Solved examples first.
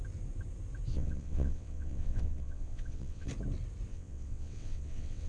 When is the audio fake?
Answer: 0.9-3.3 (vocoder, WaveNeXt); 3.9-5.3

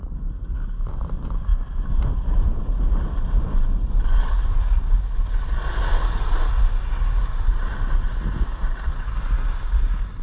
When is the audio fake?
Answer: none

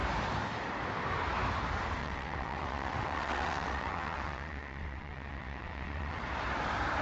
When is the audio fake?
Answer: 2.0-6.2 (vocoder, WaveNeXt)